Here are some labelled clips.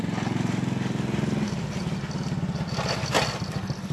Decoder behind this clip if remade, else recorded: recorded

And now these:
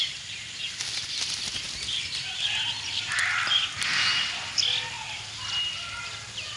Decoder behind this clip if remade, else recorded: recorded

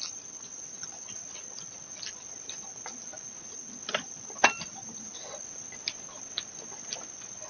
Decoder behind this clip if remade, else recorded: recorded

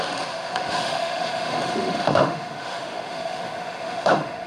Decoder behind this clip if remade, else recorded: remade, autoencoder, DAC-VAE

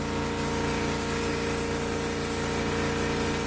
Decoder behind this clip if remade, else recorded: recorded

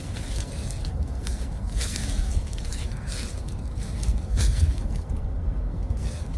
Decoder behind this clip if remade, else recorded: remade, codec, SNAC